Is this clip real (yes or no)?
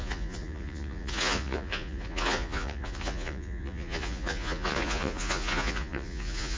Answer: no